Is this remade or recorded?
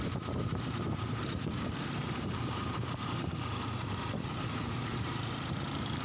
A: remade